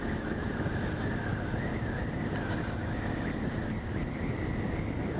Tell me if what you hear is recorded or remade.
recorded